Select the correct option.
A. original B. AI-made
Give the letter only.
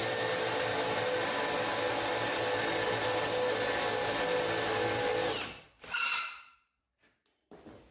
A